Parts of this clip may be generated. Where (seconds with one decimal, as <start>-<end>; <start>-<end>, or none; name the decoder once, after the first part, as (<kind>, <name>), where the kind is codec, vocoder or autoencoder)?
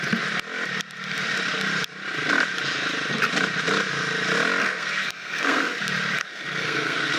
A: 4.6-5.8 (codec, SNAC); 6.2-7.2